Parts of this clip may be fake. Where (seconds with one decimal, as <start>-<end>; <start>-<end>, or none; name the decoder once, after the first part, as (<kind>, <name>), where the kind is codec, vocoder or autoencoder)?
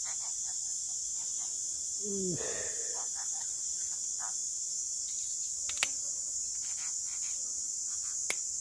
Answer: none